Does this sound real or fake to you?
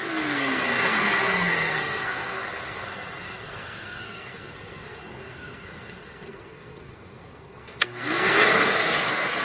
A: fake